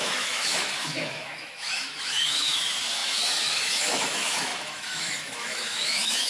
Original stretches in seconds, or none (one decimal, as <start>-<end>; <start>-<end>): none